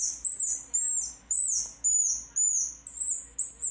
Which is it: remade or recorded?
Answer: recorded